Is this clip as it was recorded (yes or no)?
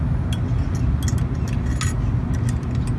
yes